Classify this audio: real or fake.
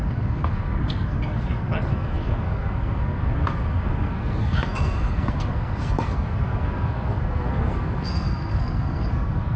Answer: fake